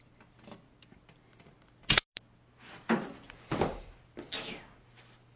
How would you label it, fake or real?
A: real